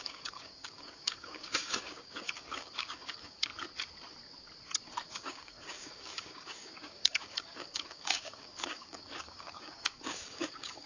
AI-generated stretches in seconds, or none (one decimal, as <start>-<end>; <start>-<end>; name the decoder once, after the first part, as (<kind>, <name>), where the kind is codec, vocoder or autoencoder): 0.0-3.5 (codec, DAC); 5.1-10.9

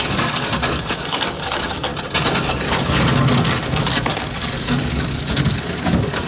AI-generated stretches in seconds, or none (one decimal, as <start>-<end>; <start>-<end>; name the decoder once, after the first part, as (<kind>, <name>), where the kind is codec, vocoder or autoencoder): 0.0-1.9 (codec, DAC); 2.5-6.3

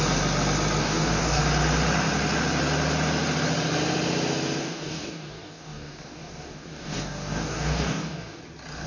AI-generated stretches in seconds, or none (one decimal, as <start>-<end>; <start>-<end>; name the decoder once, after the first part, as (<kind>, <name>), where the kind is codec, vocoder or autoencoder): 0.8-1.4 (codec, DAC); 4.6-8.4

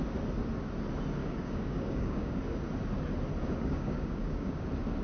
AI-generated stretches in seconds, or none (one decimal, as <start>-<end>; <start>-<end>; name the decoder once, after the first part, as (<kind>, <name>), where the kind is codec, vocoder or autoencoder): 1.2-2.4 (codec, DAC); 3.4-4.6